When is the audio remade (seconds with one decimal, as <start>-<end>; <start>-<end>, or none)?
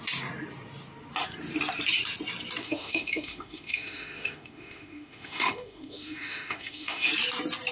2.6-7.1